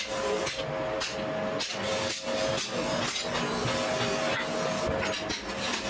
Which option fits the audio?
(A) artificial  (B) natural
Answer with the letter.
B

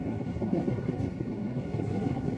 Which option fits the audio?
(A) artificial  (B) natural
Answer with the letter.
A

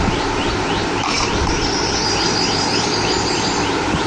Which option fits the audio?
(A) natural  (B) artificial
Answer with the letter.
B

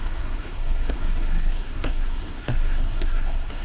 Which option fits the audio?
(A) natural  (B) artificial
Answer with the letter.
B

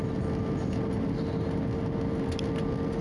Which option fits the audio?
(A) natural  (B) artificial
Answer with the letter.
A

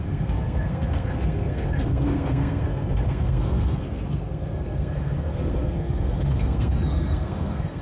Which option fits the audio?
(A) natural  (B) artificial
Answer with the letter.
B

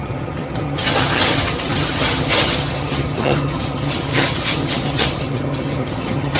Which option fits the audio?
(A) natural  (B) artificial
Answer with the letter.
B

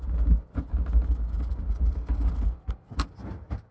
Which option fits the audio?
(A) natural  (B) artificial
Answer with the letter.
A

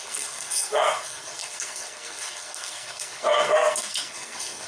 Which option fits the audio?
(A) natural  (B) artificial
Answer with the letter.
B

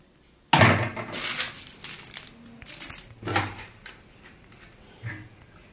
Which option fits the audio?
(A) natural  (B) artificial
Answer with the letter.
A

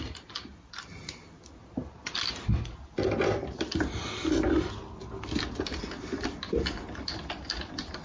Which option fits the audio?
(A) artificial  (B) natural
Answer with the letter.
B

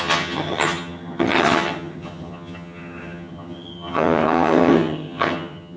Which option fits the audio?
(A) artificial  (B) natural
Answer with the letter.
A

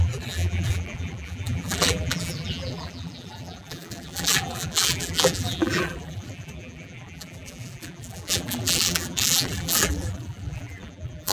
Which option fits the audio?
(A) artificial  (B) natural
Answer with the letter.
A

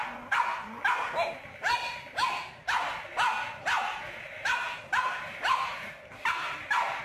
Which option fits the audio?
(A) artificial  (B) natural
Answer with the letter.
B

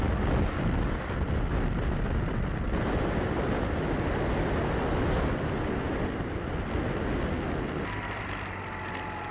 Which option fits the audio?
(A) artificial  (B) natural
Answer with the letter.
B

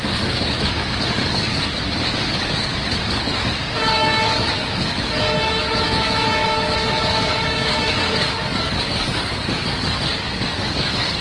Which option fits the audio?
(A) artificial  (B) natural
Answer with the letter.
A